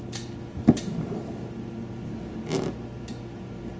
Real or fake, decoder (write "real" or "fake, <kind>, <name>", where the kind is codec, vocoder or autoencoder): real